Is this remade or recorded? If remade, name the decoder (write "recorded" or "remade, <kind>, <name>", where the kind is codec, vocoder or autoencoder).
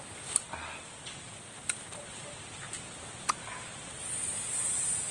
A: recorded